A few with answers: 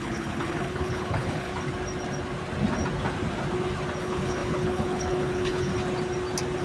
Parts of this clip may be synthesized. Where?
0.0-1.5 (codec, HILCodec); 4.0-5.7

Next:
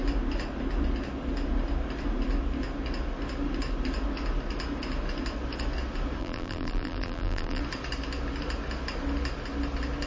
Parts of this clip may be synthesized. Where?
6.2-7.6 (vocoder, BigVGAN v2)

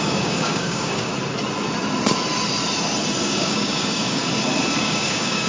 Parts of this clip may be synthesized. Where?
0.0-1.1 (codec, DAC); 3.2-4.2; 4.8-5.5

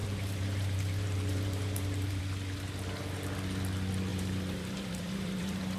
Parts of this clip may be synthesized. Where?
0.0-2.2 (vocoder, BigVGAN v2); 4.1-5.8

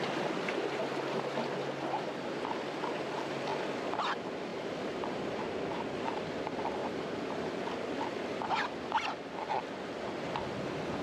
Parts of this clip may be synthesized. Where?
4.5-5.4 (vocoder, BigVGAN v2)